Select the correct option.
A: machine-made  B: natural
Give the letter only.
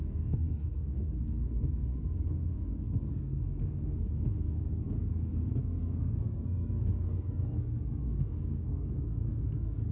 A